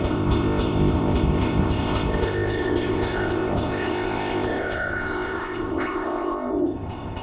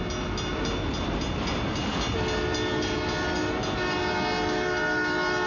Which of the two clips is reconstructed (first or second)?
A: first